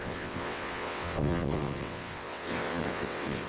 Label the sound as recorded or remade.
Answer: remade